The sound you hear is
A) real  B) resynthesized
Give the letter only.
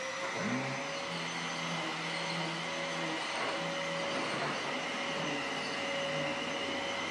A